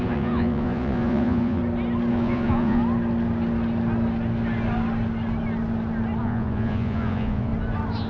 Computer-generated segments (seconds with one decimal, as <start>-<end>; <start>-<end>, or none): 0.0-1.6; 2.1-2.8; 6.2-7.5